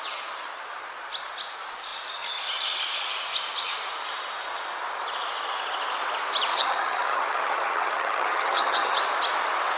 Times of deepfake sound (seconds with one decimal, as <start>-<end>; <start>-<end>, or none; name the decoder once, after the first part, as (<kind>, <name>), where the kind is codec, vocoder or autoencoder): 6.5-9.0 (vocoder, HiFi-GAN)